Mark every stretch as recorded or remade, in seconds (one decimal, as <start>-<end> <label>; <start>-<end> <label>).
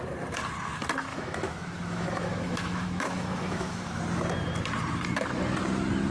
0.0-1.1 recorded; 1.1-4.0 remade; 4.0-6.1 recorded